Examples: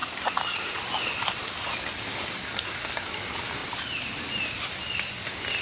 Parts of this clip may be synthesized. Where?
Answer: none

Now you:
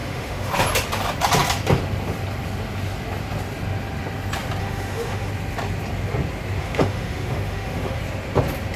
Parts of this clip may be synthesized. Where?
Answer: 0.0-0.5 (autoencoder, DAC-VAE); 4.6-5.3; 6.6-8.0

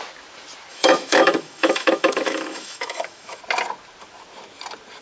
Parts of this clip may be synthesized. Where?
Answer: 0.7-3.4 (autoencoder, DAC-VAE)

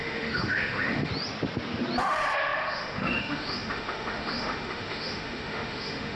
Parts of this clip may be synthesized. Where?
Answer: 0.0-1.1 (autoencoder, DAC-VAE); 2.0-6.2

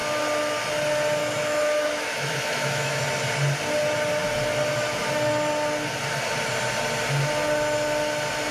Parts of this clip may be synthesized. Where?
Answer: 1.2-3.0 (autoencoder, DAC-VAE)

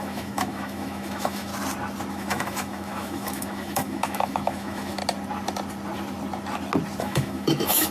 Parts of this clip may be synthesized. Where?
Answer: 0.0-1.5 (autoencoder, DAC-VAE); 2.1-5.0; 7.0-7.9